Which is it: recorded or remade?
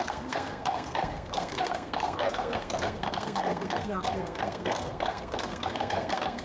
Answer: remade